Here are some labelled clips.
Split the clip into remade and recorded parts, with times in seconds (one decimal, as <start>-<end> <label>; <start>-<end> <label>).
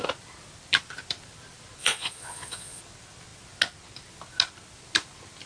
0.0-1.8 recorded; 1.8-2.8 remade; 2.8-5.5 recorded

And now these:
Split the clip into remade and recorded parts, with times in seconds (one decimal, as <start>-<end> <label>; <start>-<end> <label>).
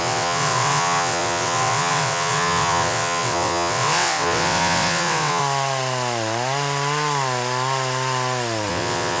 0.0-5.4 remade; 5.4-8.7 recorded; 8.7-9.2 remade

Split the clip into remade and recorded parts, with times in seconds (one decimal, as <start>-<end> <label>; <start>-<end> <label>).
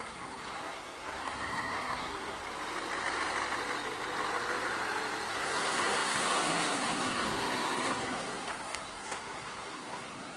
0.0-2.4 remade; 2.4-5.3 recorded; 5.3-10.4 remade